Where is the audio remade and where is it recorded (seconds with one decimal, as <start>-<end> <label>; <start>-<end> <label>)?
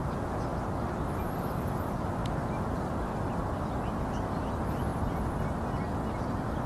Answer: 0.0-6.7 recorded